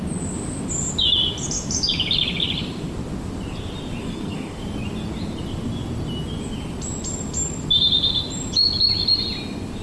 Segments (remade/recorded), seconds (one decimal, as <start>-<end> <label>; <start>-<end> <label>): 0.0-4.0 recorded; 4.0-4.6 remade; 4.6-9.8 recorded